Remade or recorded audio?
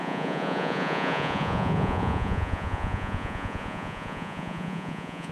remade